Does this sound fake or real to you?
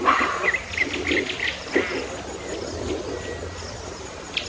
real